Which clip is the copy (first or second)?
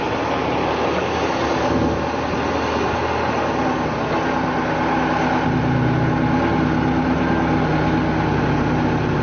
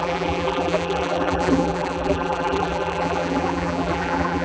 second